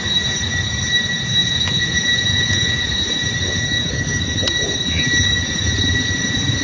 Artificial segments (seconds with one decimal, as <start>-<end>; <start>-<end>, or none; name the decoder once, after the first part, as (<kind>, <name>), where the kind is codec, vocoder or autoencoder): 1.4-2.9 (vocoder, Vocos)